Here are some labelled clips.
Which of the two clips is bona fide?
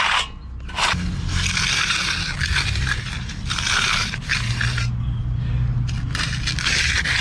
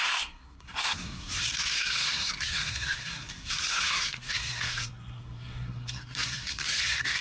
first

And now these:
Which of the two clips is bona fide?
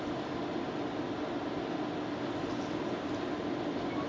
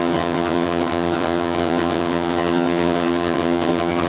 first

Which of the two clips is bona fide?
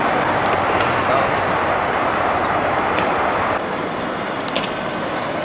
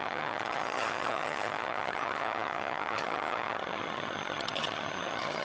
first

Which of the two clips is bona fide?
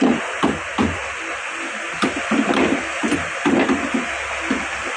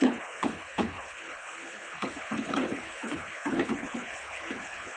first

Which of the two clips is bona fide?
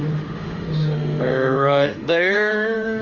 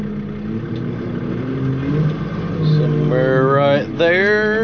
second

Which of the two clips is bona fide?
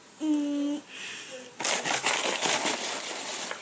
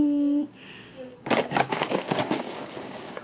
first